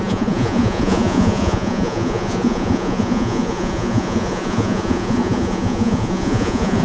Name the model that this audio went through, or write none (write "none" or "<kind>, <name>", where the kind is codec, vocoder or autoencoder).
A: vocoder, Vocos